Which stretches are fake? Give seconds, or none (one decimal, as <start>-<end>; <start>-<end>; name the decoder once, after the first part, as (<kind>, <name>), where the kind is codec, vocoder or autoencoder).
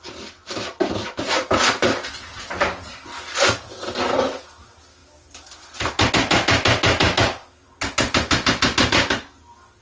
none